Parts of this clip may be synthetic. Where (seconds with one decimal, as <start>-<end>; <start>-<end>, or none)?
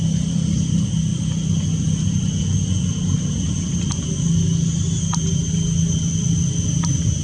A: none